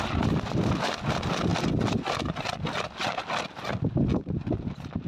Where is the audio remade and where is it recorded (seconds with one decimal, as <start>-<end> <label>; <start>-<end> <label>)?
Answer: 0.0-5.1 recorded